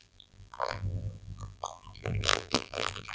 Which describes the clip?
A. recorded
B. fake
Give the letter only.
B